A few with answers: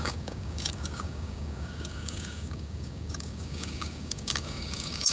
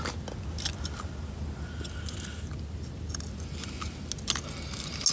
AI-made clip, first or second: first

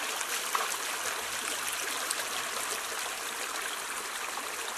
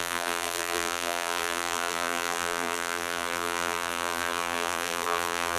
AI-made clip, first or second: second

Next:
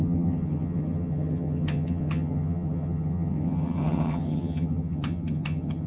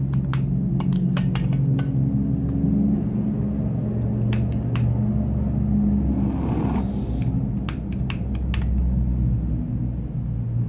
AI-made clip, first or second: first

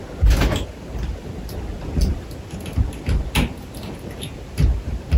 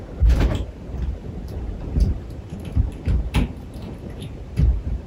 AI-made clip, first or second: second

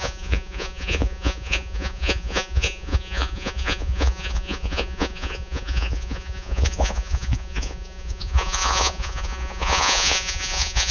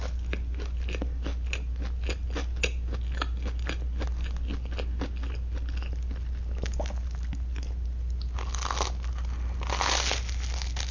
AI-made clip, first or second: first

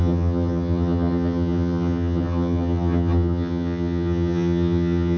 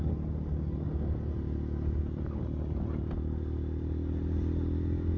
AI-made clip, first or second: first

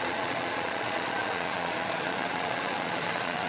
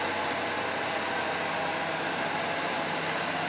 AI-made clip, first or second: first